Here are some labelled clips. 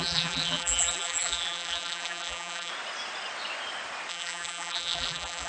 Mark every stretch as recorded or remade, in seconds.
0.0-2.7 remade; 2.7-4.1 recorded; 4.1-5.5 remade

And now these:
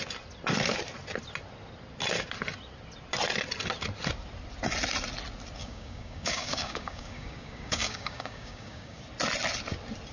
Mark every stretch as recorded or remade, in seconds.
0.0-5.6 recorded; 5.6-9.0 remade; 9.0-10.1 recorded

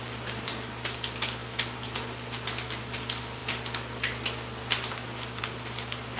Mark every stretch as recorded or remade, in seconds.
0.0-6.2 recorded

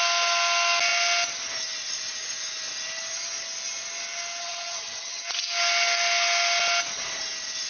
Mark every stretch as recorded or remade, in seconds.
0.0-4.4 recorded; 4.4-5.2 remade; 5.2-7.7 recorded

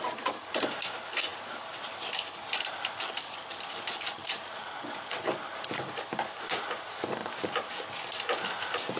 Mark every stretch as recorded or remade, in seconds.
0.0-7.2 remade; 7.2-8.5 recorded; 8.5-9.0 remade

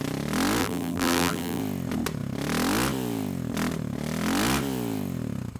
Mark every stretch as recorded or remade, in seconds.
0.0-0.6 recorded; 0.6-1.6 remade; 1.6-5.6 recorded

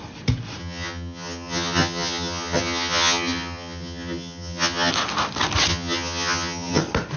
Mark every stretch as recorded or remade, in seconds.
0.0-0.6 recorded; 0.6-4.9 remade; 4.9-5.7 recorded; 5.7-6.8 remade; 6.8-7.2 recorded

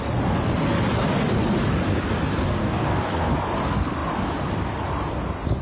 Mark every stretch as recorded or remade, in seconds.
0.0-2.6 recorded; 2.6-3.3 remade; 3.3-5.6 recorded